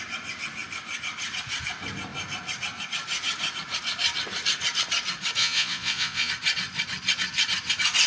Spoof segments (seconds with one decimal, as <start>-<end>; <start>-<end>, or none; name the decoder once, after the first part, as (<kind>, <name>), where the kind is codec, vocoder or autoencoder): 5.4-6.3 (vocoder, Vocos)